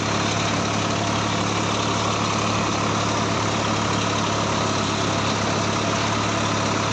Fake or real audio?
real